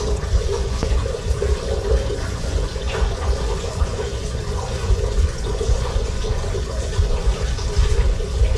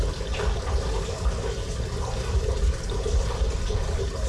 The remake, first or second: first